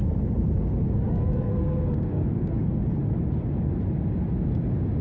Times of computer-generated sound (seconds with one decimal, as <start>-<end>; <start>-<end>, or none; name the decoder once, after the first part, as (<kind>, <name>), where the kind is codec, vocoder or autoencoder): 1.5-2.8 (codec, SNAC)